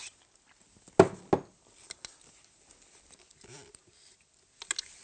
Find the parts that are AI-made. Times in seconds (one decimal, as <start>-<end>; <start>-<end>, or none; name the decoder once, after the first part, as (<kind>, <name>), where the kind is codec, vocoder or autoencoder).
none